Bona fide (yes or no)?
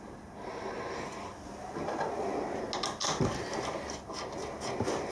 yes